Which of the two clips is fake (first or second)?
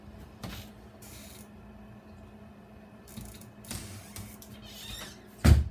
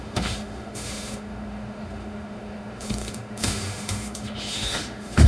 second